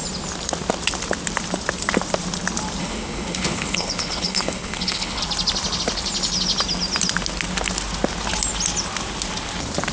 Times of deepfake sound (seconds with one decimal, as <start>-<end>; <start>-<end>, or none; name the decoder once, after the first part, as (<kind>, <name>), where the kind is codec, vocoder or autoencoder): 2.8-5.2 (codec, HILCodec)